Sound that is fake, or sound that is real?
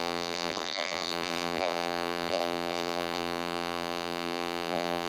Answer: fake